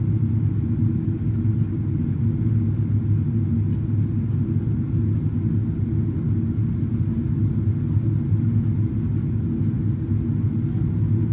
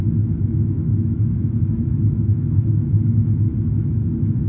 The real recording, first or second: first